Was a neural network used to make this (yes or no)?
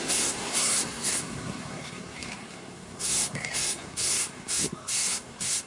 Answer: yes